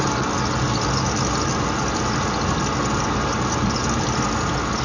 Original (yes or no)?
yes